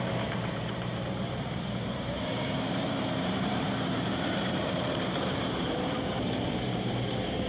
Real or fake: fake